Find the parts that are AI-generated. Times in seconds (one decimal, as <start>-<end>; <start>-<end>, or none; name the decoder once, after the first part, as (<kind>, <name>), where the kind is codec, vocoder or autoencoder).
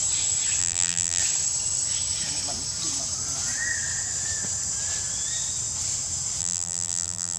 0.6-1.2 (vocoder, BigVGAN v2); 6.4-7.4